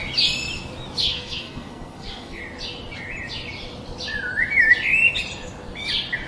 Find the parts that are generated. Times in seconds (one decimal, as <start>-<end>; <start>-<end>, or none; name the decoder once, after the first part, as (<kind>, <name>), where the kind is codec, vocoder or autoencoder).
1.0-2.4 (codec, SNAC)